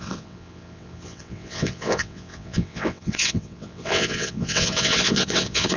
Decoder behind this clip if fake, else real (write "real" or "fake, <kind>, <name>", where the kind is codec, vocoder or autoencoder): fake, vocoder, WaveNeXt